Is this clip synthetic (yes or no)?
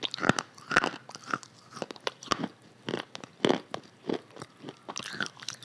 no